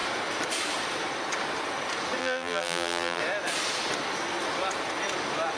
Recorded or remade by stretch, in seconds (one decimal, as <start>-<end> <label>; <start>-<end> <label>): 0.0-2.2 recorded; 2.2-3.2 remade; 3.2-5.6 recorded